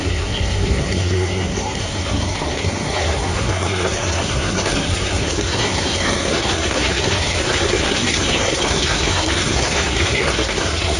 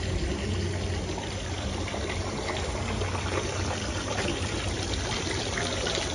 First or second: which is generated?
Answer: first